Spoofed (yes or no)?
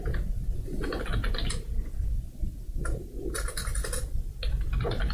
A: no